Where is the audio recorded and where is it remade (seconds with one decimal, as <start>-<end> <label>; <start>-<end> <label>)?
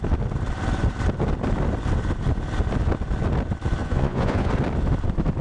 0.0-3.8 recorded; 3.8-4.5 remade; 4.5-5.4 recorded